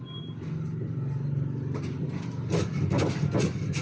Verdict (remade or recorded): recorded